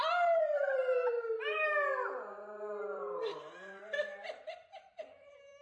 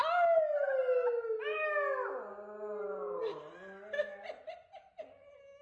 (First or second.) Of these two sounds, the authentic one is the second